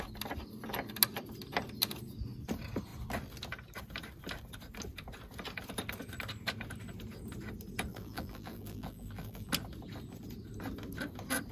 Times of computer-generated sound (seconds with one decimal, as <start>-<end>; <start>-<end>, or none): 7.9-9.5